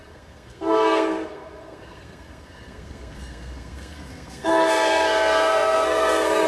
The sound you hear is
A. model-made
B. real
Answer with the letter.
A